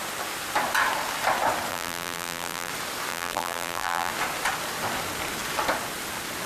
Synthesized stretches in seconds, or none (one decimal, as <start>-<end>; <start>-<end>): 1.7-2.7; 3.1-4.1